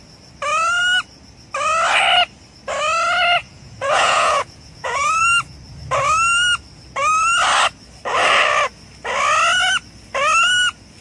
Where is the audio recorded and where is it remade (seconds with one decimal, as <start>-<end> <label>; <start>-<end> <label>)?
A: 0.0-3.4 recorded; 3.4-5.2 remade; 5.2-11.0 recorded

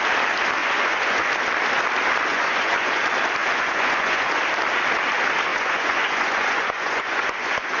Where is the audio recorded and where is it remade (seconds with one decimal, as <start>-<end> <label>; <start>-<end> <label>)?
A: 0.0-0.6 recorded; 0.6-1.3 remade; 1.3-2.3 recorded; 2.3-3.0 remade; 3.0-3.4 recorded; 3.4-4.4 remade; 4.4-5.5 recorded; 5.5-7.8 remade

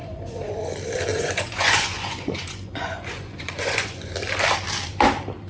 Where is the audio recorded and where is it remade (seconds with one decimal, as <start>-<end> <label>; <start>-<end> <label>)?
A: 0.0-0.6 remade; 0.6-1.1 recorded; 1.1-4.1 remade; 4.1-5.5 recorded